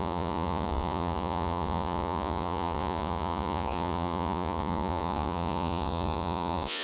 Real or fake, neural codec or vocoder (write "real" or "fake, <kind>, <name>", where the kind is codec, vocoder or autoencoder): fake, vocoder, Vocos